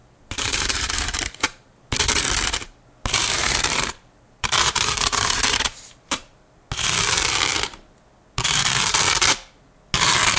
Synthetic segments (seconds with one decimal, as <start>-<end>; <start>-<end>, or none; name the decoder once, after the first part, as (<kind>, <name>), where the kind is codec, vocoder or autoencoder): 0.0-2.2 (vocoder, BigVGAN v2); 3.2-6.6